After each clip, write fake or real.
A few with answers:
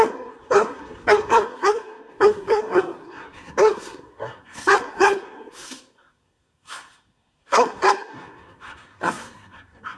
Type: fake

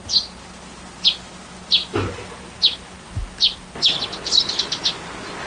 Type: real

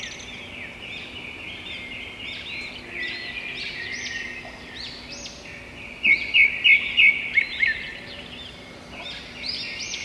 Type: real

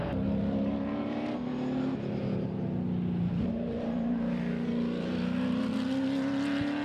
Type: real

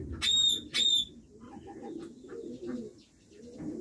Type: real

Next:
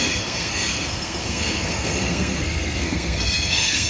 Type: fake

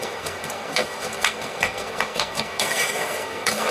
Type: fake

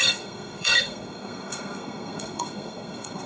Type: fake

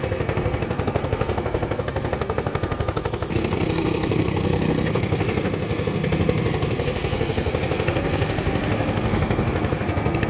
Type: fake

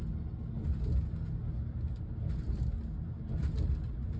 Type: real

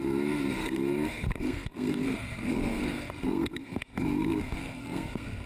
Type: fake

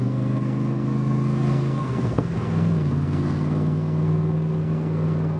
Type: fake